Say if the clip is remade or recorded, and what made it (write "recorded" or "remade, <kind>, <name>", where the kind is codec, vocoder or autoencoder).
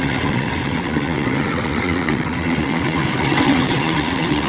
remade, vocoder, WaveNeXt